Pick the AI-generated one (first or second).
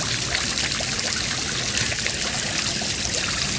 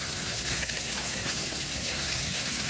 second